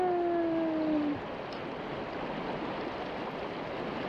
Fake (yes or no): no